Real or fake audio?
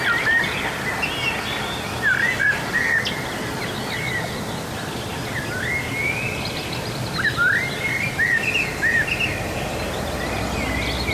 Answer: real